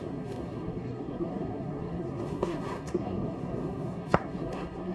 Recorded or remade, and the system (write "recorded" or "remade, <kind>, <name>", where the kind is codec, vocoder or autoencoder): remade, codec, SNAC